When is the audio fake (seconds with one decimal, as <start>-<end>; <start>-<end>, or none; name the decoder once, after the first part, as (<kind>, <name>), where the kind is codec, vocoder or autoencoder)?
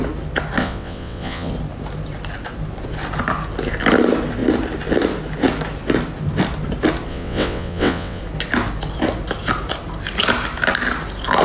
0.6-1.5 (vocoder, WaveNeXt); 7.1-8.2